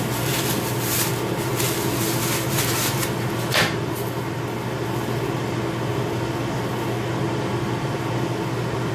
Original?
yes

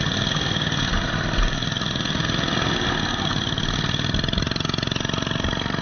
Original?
yes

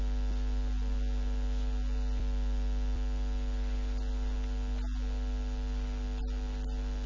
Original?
yes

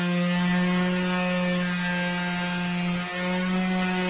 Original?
yes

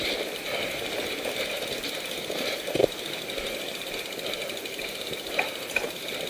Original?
yes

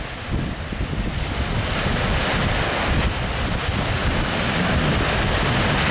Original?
yes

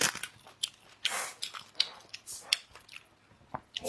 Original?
yes